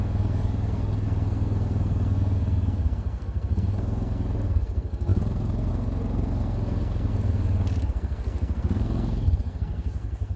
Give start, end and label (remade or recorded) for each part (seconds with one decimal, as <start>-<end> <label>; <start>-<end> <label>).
0.0-10.4 remade